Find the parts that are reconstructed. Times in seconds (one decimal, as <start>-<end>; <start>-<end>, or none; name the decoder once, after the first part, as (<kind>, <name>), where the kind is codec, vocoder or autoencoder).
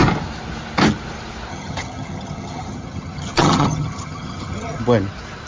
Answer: 1.5-4.8 (vocoder, HiFi-GAN)